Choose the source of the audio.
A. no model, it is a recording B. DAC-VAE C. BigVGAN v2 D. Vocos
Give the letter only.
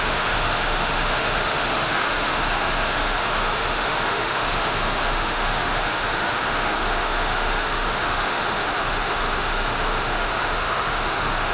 B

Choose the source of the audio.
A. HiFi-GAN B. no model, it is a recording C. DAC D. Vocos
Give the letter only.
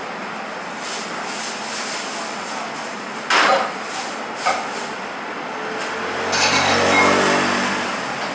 B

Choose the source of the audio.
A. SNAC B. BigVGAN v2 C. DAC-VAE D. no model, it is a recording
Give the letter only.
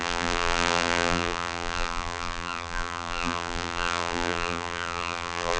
B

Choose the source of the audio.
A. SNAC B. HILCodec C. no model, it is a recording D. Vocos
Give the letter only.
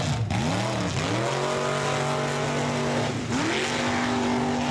C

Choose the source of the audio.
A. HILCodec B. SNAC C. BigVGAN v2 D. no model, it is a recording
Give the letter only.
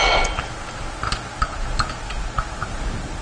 D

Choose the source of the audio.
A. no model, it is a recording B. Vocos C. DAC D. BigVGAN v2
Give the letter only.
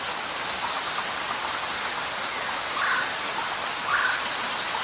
A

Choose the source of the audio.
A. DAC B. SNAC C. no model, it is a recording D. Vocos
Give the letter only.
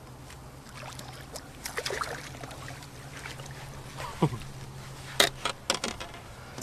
C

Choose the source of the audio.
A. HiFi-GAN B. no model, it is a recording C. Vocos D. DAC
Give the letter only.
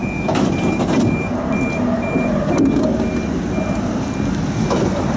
B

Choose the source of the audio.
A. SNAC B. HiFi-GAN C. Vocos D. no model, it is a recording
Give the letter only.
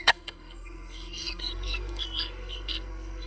A